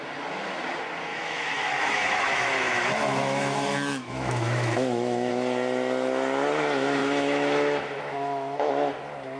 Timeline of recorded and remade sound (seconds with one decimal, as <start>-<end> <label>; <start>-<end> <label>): 0.0-1.1 recorded; 1.1-5.3 remade; 5.3-7.0 recorded; 7.0-8.7 remade; 8.7-9.4 recorded